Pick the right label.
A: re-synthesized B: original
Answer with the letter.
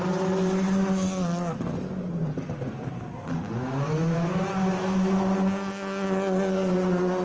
B